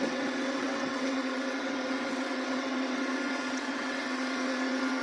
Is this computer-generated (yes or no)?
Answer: yes